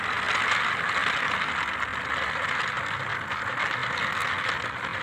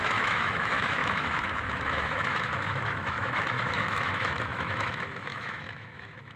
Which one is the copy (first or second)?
second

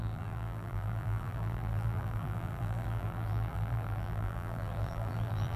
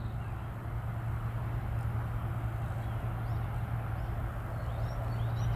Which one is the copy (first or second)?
first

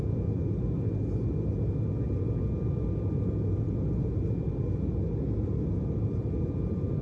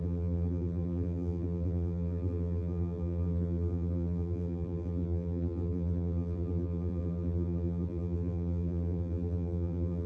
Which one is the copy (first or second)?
second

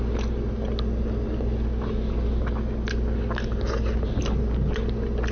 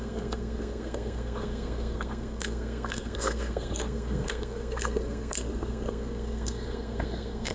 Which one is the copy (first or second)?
second